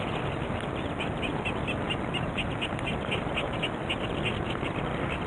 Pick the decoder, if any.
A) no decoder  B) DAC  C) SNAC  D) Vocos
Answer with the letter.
A